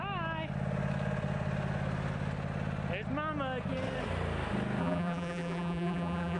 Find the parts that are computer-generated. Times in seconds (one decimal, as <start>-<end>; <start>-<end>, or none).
4.8-6.4